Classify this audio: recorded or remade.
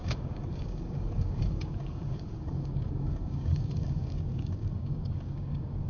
remade